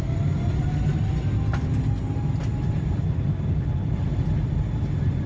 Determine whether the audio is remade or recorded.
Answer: recorded